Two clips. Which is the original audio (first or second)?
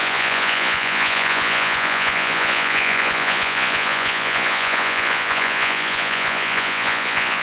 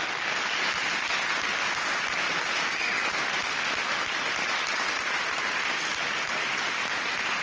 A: second